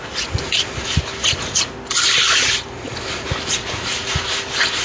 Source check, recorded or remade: recorded